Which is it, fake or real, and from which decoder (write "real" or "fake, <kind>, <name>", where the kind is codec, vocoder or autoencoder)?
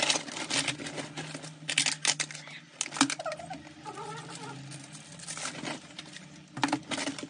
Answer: real